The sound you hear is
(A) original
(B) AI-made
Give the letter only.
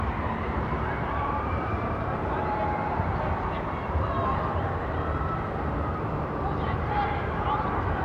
B